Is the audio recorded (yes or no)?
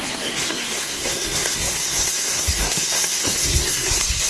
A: no